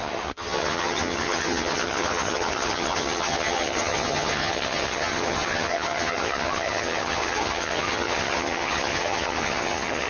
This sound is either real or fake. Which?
fake